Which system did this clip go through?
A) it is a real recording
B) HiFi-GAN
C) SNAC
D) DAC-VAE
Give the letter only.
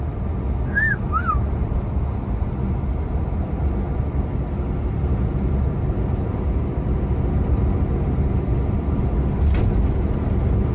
A